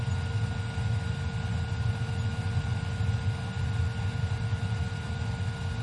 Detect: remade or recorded recorded